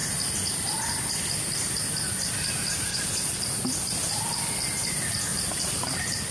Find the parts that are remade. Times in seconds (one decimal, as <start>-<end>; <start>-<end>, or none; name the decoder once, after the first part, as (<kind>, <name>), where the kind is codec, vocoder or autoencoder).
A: 2.9-3.4 (vocoder, Vocos)